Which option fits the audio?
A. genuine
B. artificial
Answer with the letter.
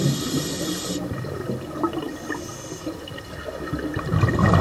A